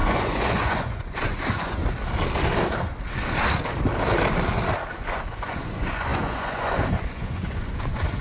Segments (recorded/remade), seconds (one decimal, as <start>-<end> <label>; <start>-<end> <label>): 0.0-1.8 remade; 1.8-5.0 recorded; 5.0-8.2 remade